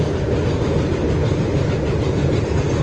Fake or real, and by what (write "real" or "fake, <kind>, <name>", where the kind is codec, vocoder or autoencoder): real